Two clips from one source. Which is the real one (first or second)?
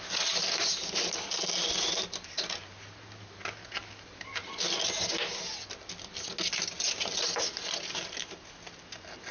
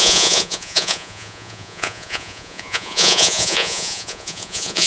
first